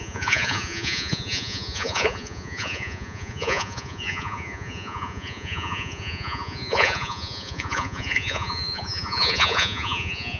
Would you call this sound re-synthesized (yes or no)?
yes